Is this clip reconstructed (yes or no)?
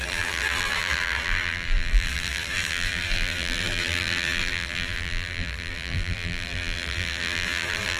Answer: yes